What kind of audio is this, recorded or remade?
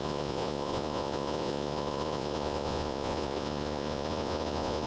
remade